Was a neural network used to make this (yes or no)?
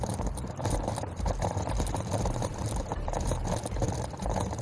yes